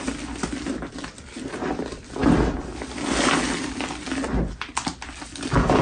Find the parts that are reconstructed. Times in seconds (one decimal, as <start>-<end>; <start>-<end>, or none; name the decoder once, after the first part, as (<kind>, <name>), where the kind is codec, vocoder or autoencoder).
none